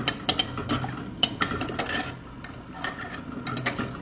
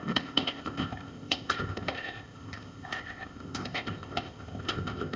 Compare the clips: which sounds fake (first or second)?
second